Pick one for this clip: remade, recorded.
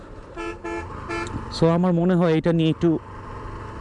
recorded